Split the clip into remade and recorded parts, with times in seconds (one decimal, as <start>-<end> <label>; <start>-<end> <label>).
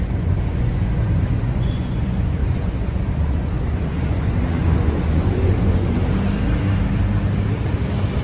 0.0-6.0 remade; 6.0-8.2 recorded